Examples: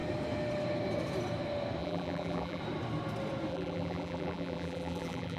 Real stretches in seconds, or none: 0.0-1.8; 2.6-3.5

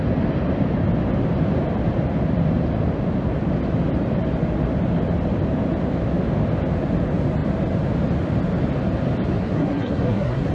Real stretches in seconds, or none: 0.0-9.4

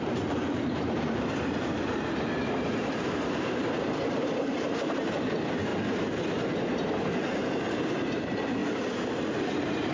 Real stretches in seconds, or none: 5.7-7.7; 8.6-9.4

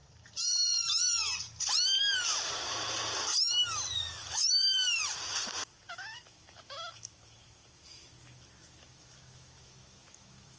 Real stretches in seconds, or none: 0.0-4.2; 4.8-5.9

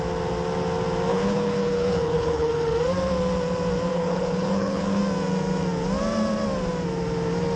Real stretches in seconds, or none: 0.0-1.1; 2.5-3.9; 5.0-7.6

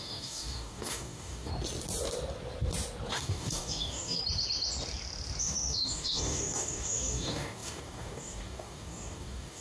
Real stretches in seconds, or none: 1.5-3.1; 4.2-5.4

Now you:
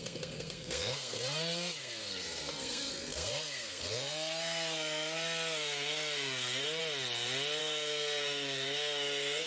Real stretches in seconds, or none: 6.8-7.6